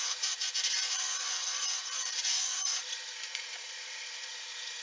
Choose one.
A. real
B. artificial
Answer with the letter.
B